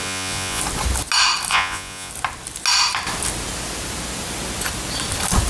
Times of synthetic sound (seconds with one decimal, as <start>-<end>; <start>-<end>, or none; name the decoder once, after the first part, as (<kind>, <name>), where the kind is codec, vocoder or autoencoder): 0.0-0.6 (vocoder, Vocos); 1.5-2.1